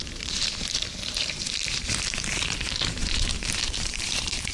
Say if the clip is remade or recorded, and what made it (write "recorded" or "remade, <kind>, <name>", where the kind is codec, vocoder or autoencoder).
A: remade, vocoder, BigVGAN v2